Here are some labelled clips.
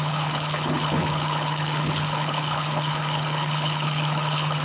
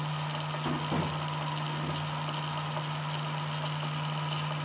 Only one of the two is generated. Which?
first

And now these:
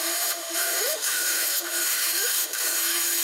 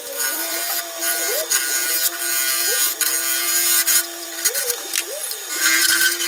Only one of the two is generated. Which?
first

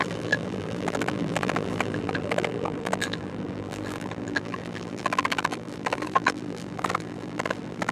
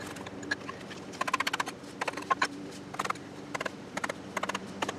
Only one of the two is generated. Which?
first